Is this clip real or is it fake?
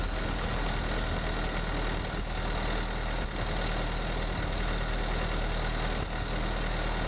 real